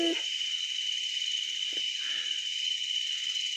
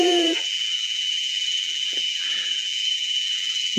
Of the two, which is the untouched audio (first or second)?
first